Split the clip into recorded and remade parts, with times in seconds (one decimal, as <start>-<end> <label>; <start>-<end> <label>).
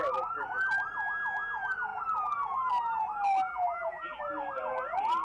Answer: 0.0-3.5 recorded; 3.5-4.2 remade; 4.2-5.2 recorded